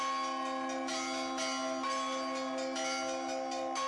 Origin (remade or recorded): recorded